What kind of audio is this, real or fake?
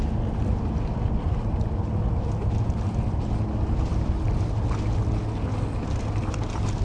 real